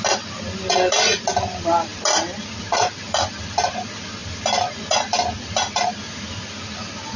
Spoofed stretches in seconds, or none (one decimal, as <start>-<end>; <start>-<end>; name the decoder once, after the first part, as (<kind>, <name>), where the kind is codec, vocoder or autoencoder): none